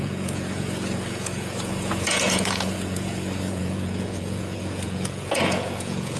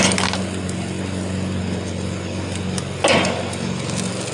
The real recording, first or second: second